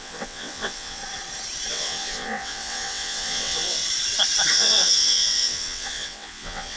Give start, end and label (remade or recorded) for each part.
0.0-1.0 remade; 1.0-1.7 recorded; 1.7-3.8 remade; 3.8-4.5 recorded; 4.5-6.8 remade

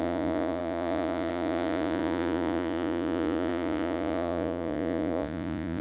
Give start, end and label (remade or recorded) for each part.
0.0-5.8 remade

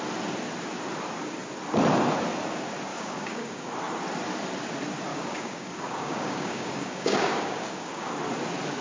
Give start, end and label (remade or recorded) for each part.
0.0-2.9 recorded; 2.9-3.7 remade; 3.7-5.1 recorded; 5.1-8.1 remade; 8.1-8.8 recorded

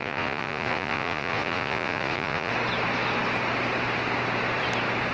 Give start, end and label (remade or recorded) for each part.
0.0-2.5 remade; 2.5-5.1 recorded